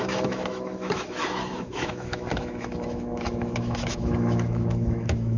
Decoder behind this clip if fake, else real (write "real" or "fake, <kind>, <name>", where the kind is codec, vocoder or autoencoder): fake, autoencoder, DAC-VAE